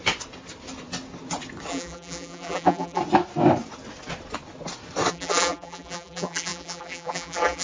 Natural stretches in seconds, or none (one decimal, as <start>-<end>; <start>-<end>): 0.0-1.7; 3.0-5.1